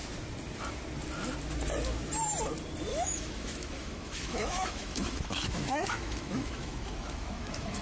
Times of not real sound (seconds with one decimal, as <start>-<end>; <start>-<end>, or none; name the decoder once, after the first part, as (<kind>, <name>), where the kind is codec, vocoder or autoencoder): 2.9-7.8 (autoencoder, DAC-VAE)